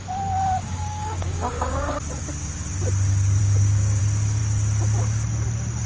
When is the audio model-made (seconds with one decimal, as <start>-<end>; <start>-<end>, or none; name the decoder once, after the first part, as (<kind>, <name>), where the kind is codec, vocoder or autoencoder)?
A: 0.6-1.9 (codec, DAC); 3.4-4.0